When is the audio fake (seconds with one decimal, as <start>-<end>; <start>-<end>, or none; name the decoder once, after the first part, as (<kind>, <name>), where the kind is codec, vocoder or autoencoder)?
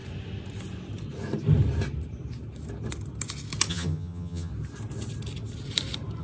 3.7-4.5 (vocoder, HiFi-GAN)